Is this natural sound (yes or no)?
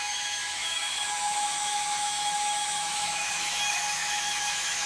no